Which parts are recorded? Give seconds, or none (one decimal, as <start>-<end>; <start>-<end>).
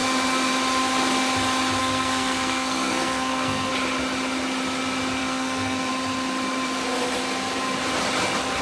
0.0-1.8; 3.7-5.2; 5.9-8.6